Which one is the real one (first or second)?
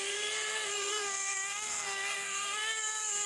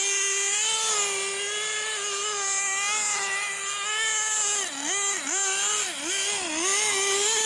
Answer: second